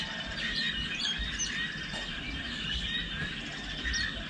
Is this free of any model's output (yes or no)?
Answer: yes